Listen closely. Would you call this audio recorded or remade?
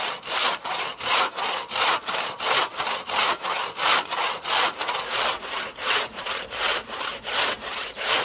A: remade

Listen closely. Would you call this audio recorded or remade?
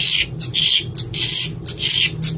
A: recorded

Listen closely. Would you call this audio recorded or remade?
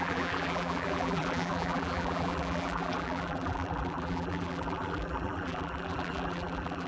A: remade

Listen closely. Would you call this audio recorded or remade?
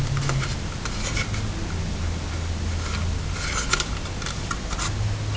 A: recorded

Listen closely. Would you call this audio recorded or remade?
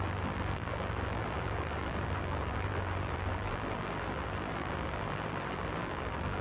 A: remade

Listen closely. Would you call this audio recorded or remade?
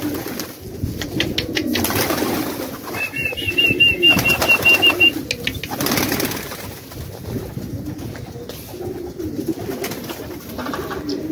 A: recorded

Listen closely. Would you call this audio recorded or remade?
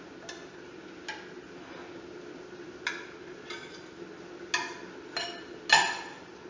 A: recorded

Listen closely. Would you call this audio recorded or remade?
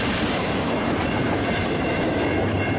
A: remade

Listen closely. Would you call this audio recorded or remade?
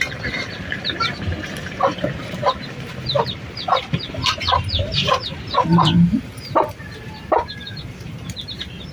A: remade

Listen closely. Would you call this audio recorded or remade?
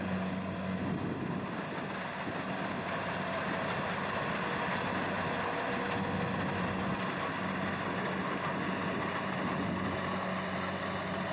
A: recorded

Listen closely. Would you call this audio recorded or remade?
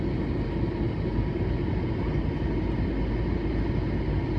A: recorded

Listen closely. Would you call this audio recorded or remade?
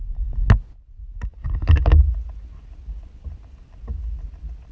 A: recorded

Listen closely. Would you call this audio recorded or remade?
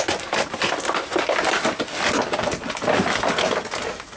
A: recorded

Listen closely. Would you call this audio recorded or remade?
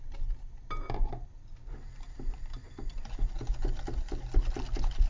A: recorded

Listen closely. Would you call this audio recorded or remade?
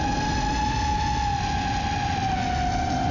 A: recorded